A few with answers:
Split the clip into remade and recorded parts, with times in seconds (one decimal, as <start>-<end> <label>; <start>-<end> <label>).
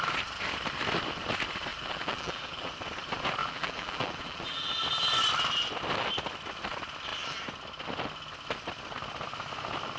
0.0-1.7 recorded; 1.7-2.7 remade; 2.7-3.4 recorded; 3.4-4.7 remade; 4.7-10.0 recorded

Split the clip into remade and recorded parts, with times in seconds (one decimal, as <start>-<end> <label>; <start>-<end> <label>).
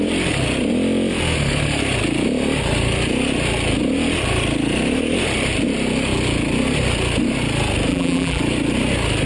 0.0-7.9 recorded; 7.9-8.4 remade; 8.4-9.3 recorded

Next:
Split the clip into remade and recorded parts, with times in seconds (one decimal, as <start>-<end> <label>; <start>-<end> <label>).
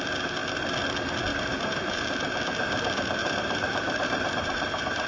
0.0-1.3 recorded; 1.3-2.0 remade; 2.0-3.2 recorded; 3.2-5.1 remade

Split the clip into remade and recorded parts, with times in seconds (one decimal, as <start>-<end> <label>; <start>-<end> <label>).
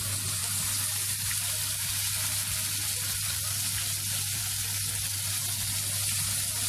0.0-6.7 recorded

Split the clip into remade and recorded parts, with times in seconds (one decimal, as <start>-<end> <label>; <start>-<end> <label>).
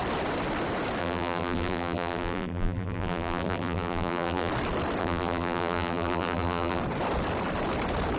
0.0-1.0 recorded; 1.0-4.5 remade; 4.5-5.0 recorded; 5.0-6.8 remade; 6.8-8.2 recorded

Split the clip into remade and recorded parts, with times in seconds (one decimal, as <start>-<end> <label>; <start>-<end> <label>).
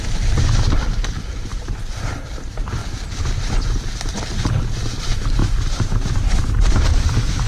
0.0-2.8 remade; 2.8-3.5 recorded; 3.5-5.4 remade; 5.4-6.2 recorded; 6.2-7.5 remade